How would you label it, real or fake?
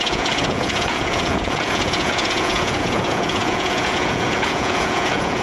fake